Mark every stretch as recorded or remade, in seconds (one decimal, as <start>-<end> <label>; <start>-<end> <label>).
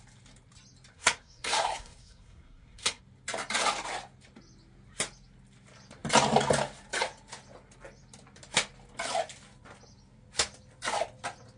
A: 0.0-0.9 recorded; 0.9-3.0 remade; 3.0-11.6 recorded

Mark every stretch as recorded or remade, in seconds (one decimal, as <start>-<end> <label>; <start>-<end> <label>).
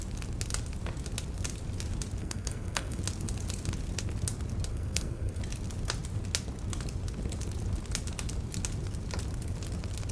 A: 0.0-2.2 recorded; 2.2-3.0 remade; 3.0-4.7 recorded; 4.7-5.4 remade; 5.4-10.1 recorded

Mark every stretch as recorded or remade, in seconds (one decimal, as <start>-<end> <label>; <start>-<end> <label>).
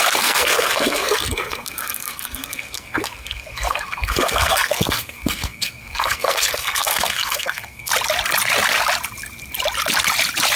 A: 0.0-7.9 remade; 7.9-10.6 recorded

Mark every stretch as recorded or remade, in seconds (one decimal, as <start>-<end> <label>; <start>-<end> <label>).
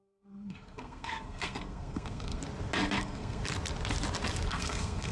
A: 0.0-2.4 remade; 2.4-3.0 recorded; 3.0-3.4 remade; 3.4-4.5 recorded; 4.5-5.1 remade